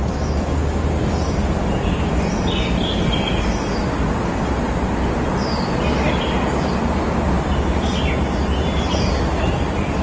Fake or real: real